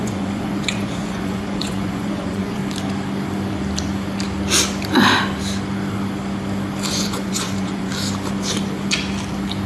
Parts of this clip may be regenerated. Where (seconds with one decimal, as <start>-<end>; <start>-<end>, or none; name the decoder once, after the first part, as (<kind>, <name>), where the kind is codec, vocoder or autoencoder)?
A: 0.0-2.6 (vocoder, Vocos); 6.9-7.9